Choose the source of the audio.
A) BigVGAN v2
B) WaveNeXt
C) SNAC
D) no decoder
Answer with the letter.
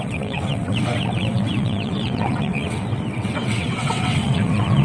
B